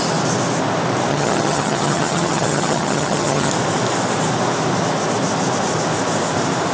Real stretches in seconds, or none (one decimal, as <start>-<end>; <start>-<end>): 0.0-1.1; 3.5-6.7